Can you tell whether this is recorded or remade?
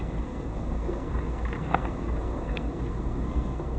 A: remade